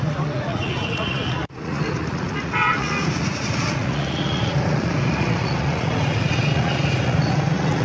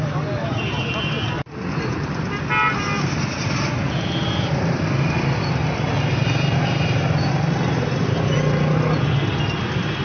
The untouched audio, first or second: second